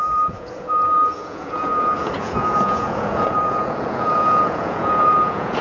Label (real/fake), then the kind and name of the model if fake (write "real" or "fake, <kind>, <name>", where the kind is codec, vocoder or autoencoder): fake, vocoder, Vocos